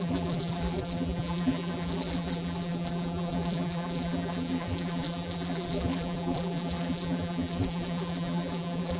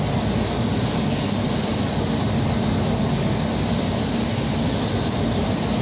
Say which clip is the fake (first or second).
first